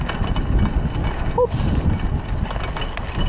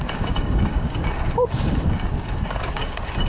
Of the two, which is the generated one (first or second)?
second